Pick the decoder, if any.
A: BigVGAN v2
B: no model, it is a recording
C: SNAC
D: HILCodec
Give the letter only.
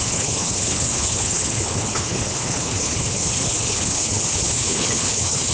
D